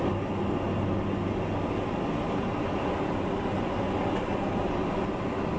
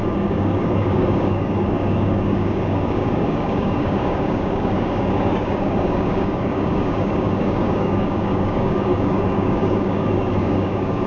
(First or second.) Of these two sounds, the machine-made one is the second